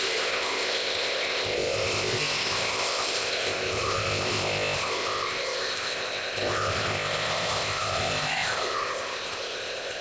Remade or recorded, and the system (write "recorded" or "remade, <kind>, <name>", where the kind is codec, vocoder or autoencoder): remade, codec, ZipCodec